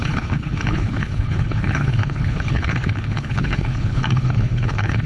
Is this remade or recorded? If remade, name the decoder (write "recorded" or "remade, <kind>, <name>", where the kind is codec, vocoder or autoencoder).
remade, codec, HILCodec